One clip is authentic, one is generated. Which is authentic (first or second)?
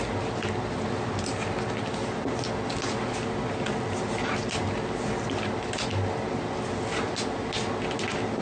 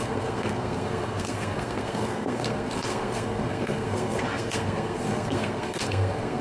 first